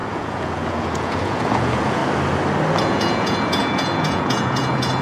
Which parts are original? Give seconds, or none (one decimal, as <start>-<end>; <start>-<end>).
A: 2.0-2.8